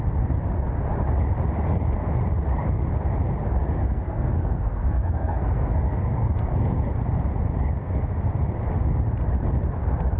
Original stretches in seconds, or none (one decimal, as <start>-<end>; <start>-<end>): 0.0-3.8; 6.9-7.8; 8.3-10.2

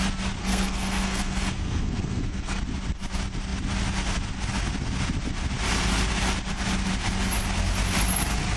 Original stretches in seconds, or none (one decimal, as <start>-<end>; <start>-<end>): 0.0-0.4; 2.6-8.6

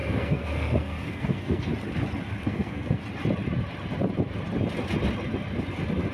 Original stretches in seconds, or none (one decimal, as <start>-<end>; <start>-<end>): 1.7-2.4; 3.0-6.1